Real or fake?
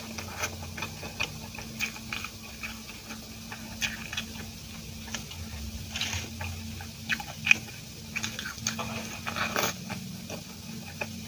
real